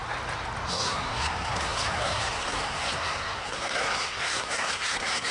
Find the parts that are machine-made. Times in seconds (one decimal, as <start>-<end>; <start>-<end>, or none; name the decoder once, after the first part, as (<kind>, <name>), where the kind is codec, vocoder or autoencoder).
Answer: 0.7-5.3 (codec, SNAC)